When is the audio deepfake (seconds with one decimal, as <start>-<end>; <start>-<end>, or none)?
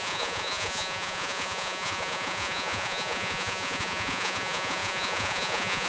0.0-5.9